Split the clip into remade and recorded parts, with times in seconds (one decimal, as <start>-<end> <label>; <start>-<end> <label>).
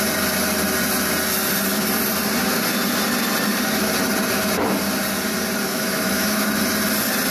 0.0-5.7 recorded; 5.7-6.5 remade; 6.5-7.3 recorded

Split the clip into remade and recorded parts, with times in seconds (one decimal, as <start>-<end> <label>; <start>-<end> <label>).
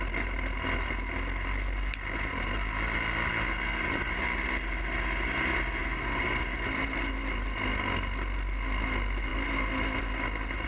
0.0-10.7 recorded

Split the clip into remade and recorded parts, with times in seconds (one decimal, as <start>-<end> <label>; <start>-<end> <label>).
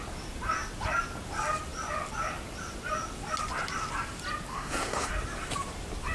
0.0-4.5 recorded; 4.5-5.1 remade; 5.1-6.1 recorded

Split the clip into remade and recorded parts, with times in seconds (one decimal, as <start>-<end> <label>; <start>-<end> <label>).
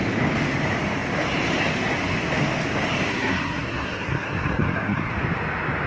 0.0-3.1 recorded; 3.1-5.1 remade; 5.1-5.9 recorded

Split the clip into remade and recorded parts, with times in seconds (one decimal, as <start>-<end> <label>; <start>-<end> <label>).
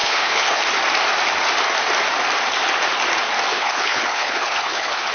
0.0-0.6 remade; 0.6-3.5 recorded; 3.5-5.1 remade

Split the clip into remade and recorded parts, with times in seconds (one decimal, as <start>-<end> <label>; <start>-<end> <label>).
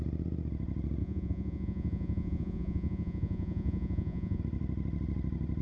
0.0-1.0 recorded; 1.0-4.4 remade; 4.4-5.6 recorded